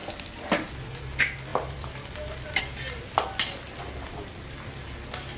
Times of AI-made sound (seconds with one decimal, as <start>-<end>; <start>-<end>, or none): 0.0-1.0; 1.5-2.6